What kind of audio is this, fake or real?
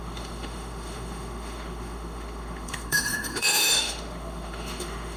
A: fake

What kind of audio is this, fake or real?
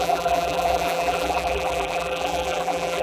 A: fake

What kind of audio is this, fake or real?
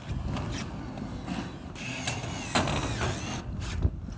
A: real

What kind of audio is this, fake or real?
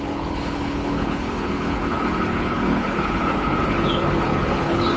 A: fake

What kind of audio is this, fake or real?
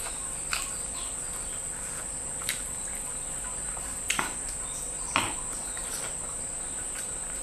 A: real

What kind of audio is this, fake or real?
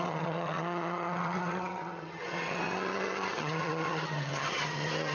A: fake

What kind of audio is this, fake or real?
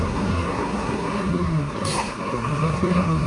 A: fake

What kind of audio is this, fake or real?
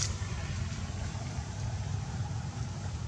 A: fake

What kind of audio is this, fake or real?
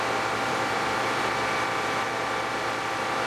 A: real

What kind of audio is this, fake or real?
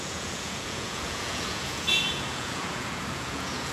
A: fake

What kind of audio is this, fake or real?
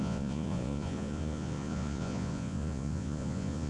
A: fake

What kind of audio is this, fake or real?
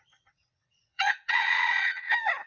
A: fake